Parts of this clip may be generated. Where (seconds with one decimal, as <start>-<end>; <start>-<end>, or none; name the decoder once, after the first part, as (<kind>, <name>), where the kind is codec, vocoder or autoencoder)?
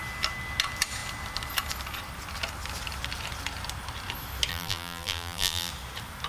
4.5-5.7 (vocoder, BigVGAN v2)